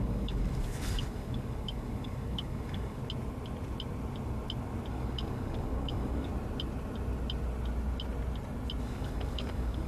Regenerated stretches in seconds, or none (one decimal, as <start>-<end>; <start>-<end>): 0.0-3.0; 4.9-6.3; 8.8-9.9